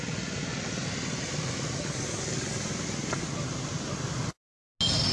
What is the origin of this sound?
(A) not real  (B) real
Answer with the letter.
B